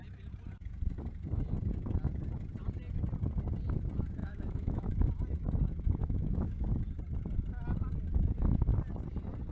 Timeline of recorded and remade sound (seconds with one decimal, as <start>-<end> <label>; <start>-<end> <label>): 0.0-4.2 recorded; 4.2-5.1 remade; 5.1-6.0 recorded; 6.0-6.6 remade; 6.6-9.5 recorded